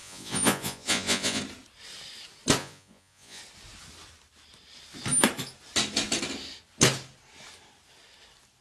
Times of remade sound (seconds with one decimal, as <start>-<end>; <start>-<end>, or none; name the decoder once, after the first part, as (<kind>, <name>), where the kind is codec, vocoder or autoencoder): 0.0-1.4 (vocoder, Vocos); 2.6-3.4